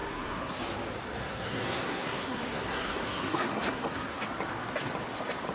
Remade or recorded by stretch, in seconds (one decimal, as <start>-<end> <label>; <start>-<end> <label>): 0.0-0.6 remade; 0.6-1.2 recorded; 1.2-4.2 remade; 4.2-5.5 recorded